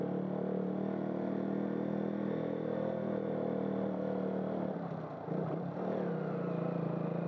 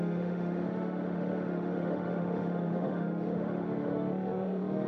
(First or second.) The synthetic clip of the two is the second